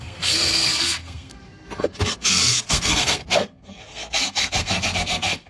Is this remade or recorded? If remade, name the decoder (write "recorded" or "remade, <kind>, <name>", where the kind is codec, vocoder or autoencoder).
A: remade, codec, SNAC